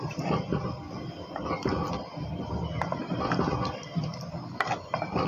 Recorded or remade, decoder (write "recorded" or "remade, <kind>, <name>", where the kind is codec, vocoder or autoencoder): recorded